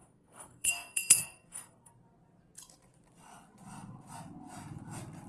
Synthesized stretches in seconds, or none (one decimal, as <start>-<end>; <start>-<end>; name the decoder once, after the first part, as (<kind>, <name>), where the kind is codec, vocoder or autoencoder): 0.0-1.9 (codec, SNAC)